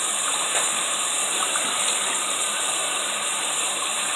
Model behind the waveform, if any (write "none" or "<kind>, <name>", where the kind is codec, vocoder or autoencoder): vocoder, BigVGAN v2